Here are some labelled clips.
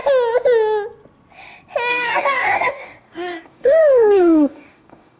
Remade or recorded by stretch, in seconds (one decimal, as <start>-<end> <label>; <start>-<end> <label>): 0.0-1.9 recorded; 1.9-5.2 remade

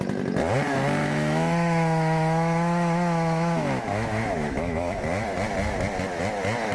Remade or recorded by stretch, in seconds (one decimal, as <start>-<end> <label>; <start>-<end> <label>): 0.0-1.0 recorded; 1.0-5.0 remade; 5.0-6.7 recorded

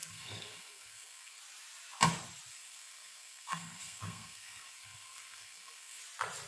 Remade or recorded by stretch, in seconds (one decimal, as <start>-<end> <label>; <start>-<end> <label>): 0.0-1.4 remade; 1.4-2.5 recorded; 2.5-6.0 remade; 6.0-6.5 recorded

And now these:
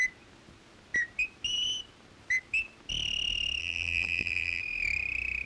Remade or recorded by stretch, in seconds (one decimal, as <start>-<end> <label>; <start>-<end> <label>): 0.0-3.6 recorded; 3.6-4.6 remade; 4.6-5.5 recorded

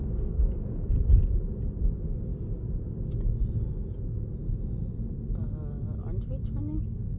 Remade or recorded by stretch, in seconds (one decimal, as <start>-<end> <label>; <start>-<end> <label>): 0.0-0.9 remade; 0.9-7.2 recorded

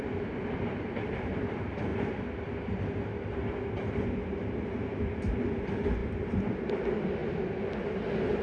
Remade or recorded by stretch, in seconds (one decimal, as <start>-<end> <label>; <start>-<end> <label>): 0.0-6.0 recorded; 6.0-6.8 remade; 6.8-8.4 recorded